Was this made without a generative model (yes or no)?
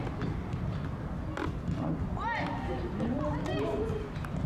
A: yes